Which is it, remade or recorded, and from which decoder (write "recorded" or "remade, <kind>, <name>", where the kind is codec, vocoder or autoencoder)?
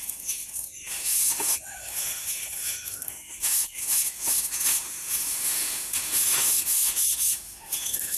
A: remade, autoencoder, DAC-VAE